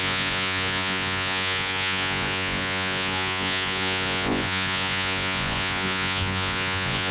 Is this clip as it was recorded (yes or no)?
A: no